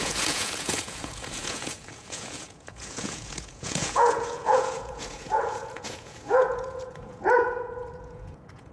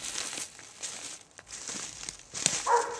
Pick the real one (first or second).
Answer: second